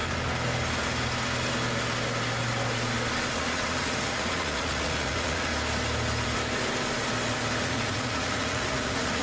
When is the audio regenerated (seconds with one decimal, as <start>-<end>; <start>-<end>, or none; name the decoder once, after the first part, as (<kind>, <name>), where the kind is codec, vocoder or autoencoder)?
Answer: 3.3-5.5 (vocoder, Vocos); 7.6-9.2